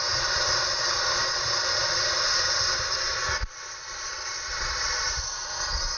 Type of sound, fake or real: real